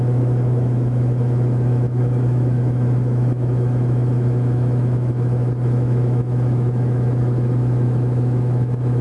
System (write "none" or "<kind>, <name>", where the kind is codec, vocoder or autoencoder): autoencoder, DAC-VAE